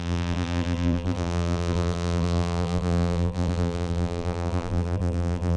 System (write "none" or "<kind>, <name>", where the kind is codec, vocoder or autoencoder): vocoder, BigVGAN v2